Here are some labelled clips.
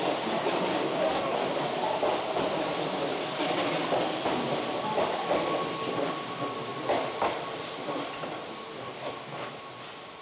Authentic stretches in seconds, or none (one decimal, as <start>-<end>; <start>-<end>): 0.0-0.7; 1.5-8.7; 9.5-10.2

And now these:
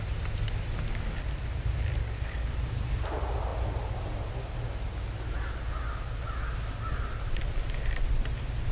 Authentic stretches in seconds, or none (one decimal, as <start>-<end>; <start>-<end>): 0.0-2.0; 2.7-8.7

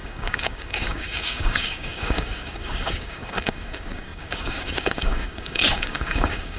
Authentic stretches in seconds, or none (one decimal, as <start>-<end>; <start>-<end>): none

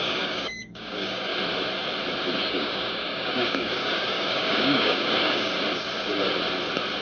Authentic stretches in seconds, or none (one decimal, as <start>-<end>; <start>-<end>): 1.3-2.5; 5.5-7.0

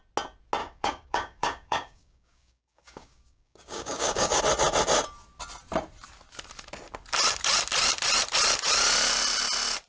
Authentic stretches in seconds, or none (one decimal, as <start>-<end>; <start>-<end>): 0.0-0.6; 4.4-9.9